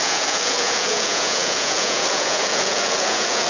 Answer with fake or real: fake